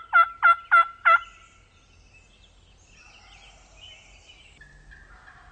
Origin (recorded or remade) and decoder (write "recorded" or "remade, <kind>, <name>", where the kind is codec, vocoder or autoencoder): recorded